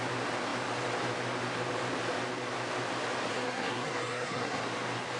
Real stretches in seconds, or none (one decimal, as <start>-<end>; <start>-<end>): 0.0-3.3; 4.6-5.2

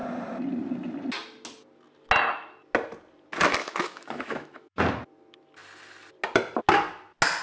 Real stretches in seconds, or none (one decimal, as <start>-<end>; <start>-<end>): 0.0-3.6; 4.8-7.4

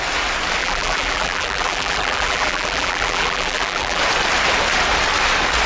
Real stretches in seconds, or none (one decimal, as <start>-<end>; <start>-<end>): 0.0-0.6; 4.0-5.7